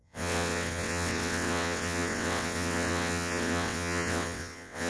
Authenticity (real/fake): fake